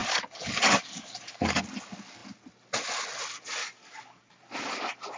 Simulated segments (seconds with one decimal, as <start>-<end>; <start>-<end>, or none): 0.0-1.6; 3.6-4.4